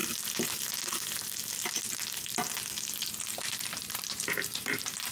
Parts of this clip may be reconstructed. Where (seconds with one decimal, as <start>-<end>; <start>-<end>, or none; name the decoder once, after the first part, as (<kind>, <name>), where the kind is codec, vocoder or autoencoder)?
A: 3.8-5.1 (vocoder, BigVGAN v2)